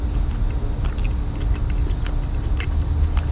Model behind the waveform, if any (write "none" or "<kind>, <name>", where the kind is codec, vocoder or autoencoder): none